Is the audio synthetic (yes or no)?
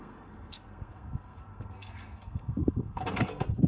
yes